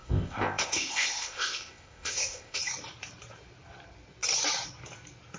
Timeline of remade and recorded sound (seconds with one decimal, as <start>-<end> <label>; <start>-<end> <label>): 0.0-2.6 remade; 2.6-5.4 recorded